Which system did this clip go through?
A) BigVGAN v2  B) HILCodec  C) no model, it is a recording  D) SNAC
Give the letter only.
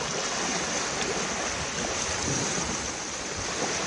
C